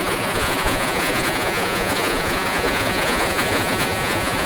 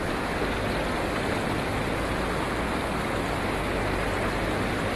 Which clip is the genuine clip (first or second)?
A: second